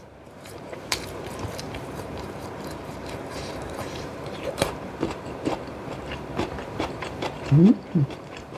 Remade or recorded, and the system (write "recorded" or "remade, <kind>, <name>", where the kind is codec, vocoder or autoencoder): remade, vocoder, BigVGAN v2